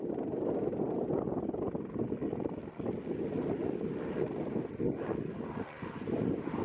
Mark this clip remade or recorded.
recorded